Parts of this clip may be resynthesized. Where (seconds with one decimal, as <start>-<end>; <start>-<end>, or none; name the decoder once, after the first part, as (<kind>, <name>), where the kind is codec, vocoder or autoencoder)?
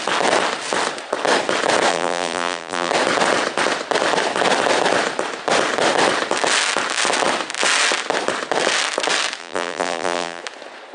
1.9-2.9 (vocoder, BigVGAN v2); 9.4-10.4